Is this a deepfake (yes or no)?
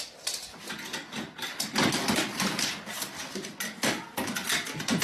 no